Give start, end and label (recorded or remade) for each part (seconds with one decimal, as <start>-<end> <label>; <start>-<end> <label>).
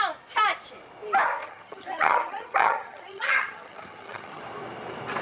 0.0-1.4 recorded; 1.4-4.4 remade; 4.4-5.2 recorded